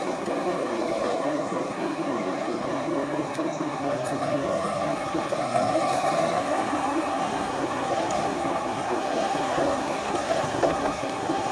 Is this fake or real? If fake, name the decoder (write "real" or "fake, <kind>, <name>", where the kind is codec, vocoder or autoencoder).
fake, codec, SNAC